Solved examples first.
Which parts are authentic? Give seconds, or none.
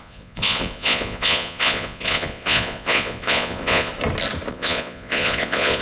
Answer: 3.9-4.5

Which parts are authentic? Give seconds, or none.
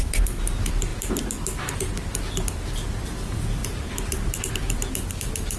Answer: 0.0-5.6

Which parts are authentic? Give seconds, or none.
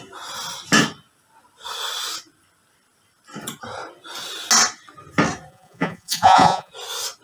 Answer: 0.0-5.5; 6.7-7.2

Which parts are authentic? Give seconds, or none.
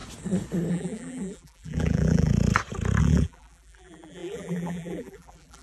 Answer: 0.0-0.7; 2.3-3.0